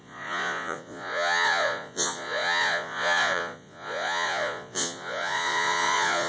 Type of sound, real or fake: fake